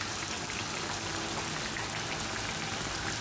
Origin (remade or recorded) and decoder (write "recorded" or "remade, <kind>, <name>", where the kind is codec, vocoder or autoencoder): recorded